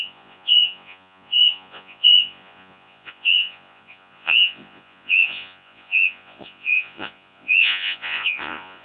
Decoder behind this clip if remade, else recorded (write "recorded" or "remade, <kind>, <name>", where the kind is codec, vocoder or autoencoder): remade, vocoder, Vocos